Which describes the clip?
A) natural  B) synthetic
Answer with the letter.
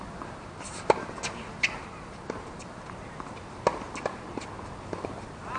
A